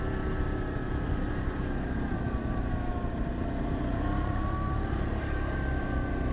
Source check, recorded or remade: remade